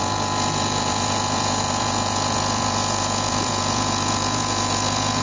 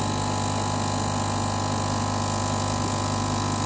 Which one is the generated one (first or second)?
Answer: first